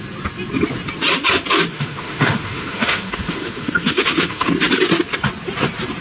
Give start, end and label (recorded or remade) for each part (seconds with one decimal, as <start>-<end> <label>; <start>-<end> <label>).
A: 0.0-1.7 recorded; 1.7-4.5 remade; 4.5-6.0 recorded